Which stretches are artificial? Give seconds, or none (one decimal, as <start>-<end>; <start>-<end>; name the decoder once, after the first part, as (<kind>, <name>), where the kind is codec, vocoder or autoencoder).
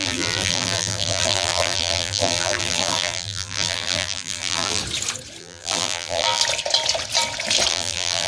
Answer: 0.0-4.8 (vocoder, BigVGAN v2); 5.4-6.4; 7.7-8.3